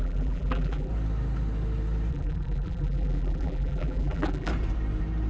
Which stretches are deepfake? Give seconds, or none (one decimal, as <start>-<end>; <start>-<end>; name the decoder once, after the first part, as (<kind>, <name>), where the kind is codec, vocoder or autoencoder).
0.0-0.9 (vocoder, BigVGAN v2); 2.1-4.5